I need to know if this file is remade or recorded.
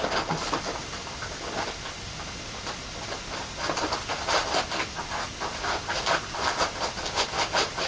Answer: recorded